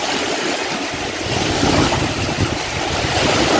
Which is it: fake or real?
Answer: real